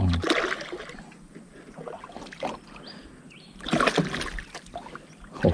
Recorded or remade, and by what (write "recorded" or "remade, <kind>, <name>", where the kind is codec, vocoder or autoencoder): recorded